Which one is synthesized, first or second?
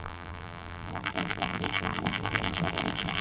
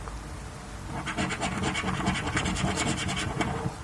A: first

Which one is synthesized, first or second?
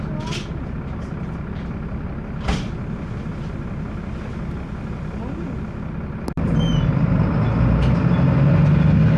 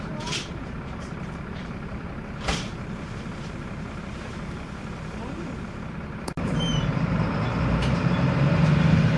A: second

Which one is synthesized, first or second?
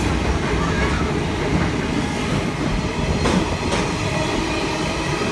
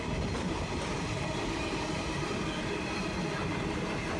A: second